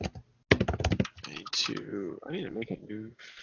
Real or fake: real